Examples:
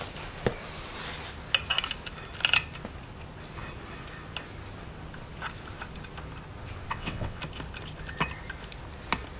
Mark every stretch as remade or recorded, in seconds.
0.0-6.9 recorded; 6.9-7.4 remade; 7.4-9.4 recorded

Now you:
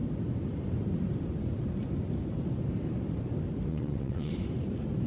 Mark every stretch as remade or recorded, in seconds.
0.0-3.7 recorded; 3.7-4.3 remade; 4.3-5.1 recorded